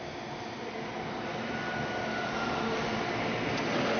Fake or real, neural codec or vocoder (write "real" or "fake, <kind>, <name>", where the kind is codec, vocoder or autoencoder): real